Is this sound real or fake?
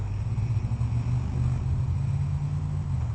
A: real